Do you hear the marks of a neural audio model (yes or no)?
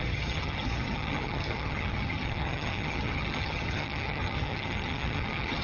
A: yes